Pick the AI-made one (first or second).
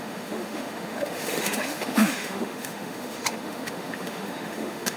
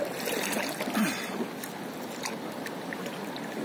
first